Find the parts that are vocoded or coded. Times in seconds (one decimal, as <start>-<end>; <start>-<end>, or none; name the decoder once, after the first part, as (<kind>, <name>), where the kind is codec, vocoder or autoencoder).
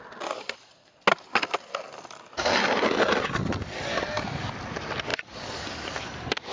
none